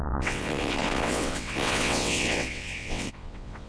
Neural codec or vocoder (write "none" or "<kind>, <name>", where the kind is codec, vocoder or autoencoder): vocoder, WaveNeXt